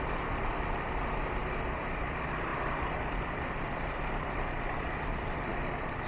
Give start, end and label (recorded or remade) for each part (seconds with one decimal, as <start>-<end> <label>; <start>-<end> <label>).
0.0-6.1 remade